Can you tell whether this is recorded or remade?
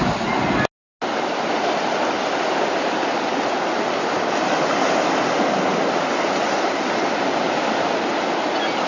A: recorded